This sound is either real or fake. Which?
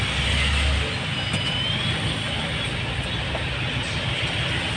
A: real